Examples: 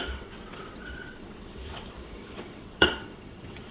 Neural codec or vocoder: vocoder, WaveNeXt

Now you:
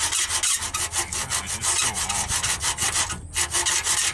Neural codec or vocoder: none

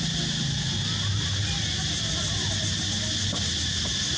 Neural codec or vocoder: none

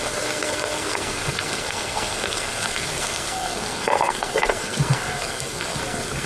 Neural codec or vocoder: codec, SNAC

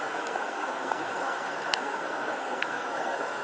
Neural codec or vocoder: codec, SNAC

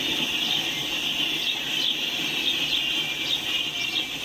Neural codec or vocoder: none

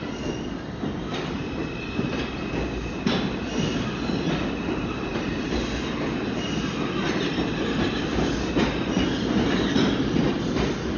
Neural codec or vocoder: none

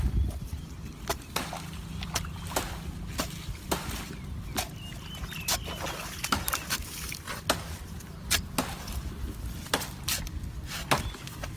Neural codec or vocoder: none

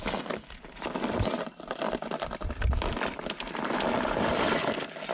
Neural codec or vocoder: none